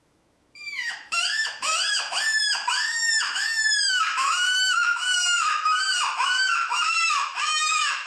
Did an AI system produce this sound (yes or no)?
yes